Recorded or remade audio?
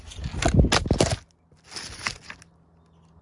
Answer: recorded